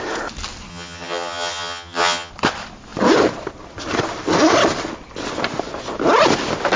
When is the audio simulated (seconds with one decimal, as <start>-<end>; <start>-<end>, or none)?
0.7-2.3